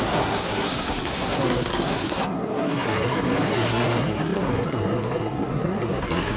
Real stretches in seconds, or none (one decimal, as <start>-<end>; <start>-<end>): none